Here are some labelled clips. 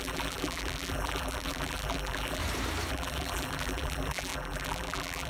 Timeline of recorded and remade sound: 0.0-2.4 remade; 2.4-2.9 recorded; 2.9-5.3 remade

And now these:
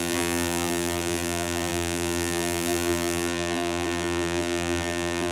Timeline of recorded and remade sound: 0.0-5.3 remade

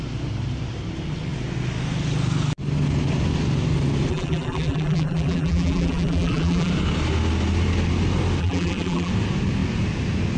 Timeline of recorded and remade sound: 0.0-4.1 recorded; 4.1-6.7 remade; 6.7-8.4 recorded; 8.4-9.1 remade; 9.1-10.4 recorded